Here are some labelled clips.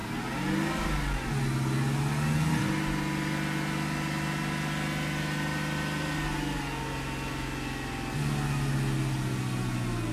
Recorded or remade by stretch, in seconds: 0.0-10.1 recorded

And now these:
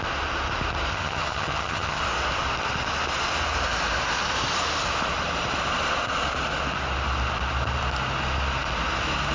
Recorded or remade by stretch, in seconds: 0.0-0.9 recorded; 0.9-2.0 remade; 2.0-9.3 recorded

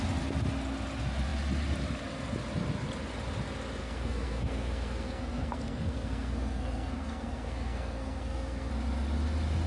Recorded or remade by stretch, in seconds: 0.0-3.8 recorded; 3.8-8.7 remade; 8.7-9.7 recorded

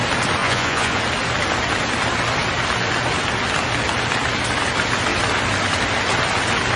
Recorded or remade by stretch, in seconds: 0.0-0.4 recorded; 0.4-1.0 remade; 1.0-6.8 recorded

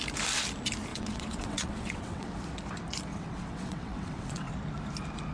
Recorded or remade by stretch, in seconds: 0.0-0.9 recorded; 0.9-2.3 remade; 2.3-3.1 recorded; 3.1-4.5 remade; 4.5-5.3 recorded